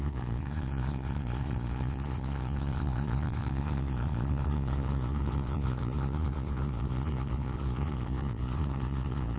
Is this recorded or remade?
remade